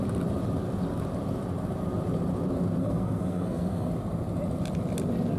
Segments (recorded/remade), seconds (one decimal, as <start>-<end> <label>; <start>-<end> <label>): 0.0-2.8 recorded; 2.8-3.9 remade; 3.9-5.4 recorded